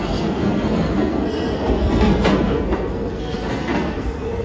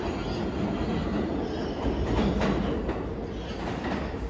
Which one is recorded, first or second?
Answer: second